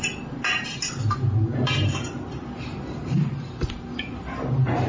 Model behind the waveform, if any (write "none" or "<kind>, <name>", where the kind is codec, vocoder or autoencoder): none